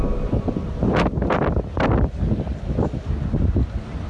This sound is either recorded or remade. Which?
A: recorded